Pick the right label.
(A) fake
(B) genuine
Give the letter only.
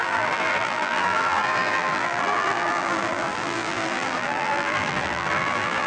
A